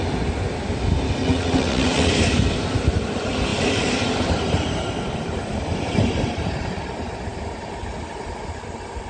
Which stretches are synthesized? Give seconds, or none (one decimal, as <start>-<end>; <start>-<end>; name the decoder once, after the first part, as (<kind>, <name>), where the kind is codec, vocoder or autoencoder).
1.2-2.1 (vocoder, WaveNeXt)